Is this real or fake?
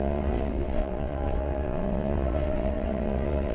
fake